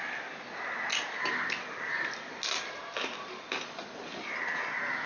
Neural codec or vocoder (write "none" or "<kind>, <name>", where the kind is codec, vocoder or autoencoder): none